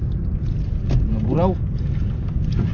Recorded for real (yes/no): yes